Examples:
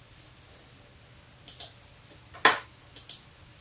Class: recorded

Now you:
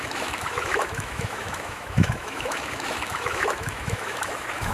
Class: remade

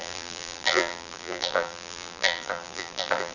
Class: remade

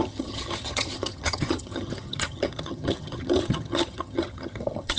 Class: remade